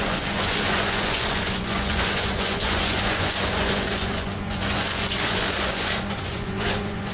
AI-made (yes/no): yes